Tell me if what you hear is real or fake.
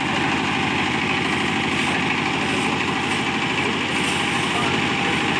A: real